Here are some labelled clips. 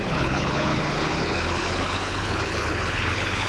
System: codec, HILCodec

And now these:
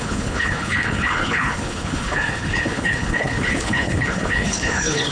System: codec, HILCodec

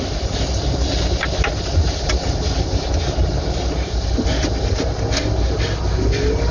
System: none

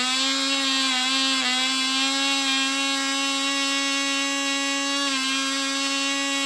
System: none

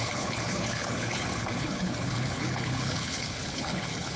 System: codec, HILCodec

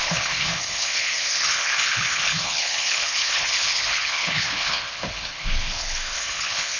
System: codec, HILCodec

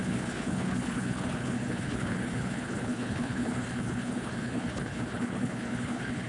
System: codec, HILCodec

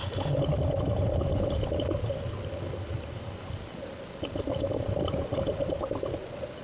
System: none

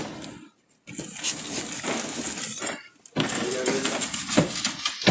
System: none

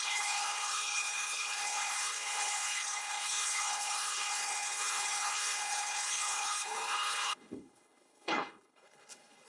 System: codec, HILCodec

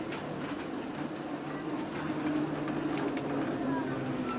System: none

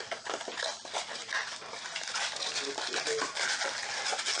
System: none